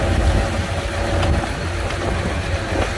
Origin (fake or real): real